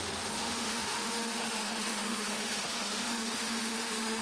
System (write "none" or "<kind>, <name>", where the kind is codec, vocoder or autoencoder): autoencoder, DAC-VAE